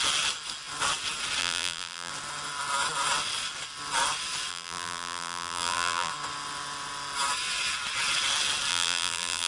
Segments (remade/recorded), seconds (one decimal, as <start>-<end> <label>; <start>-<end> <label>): 0.0-1.4 recorded; 1.4-2.1 remade; 2.1-4.5 recorded; 4.5-6.1 remade; 6.1-8.7 recorded; 8.7-9.5 remade